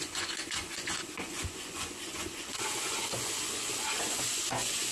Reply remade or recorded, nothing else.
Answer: remade